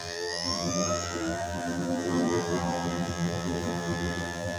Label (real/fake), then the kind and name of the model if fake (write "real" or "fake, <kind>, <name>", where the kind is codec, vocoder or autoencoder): fake, vocoder, BigVGAN v2